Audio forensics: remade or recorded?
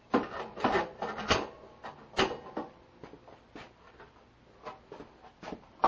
recorded